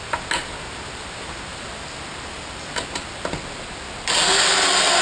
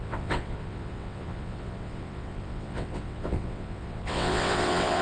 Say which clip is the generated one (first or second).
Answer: second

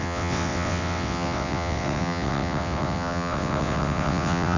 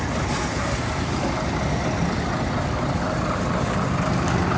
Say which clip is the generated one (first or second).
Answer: first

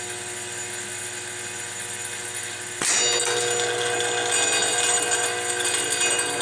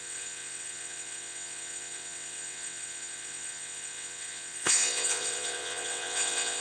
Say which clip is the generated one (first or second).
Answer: second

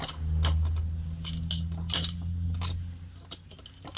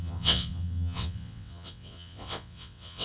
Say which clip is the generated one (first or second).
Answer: second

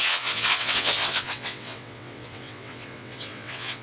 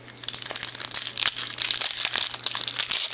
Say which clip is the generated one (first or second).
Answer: first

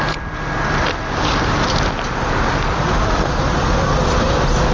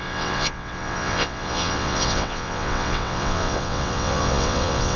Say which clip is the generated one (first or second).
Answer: second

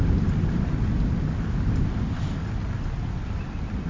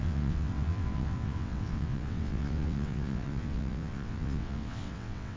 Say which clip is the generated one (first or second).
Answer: second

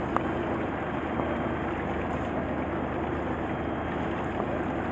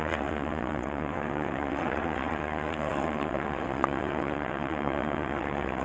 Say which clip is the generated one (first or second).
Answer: second